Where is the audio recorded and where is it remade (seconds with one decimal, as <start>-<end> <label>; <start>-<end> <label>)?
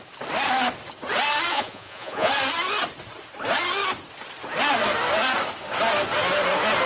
0.0-1.5 recorded; 1.5-2.3 remade; 2.3-6.9 recorded